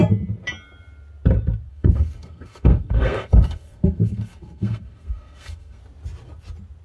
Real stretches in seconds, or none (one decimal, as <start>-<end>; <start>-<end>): 0.0-1.7; 5.8-6.8